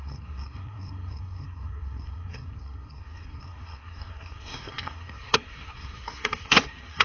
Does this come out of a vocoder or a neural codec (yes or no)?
yes